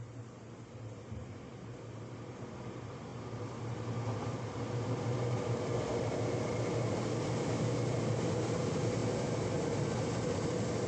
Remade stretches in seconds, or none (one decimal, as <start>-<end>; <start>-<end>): none